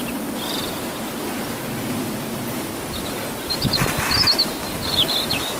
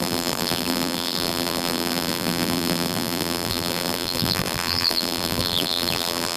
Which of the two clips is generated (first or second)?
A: second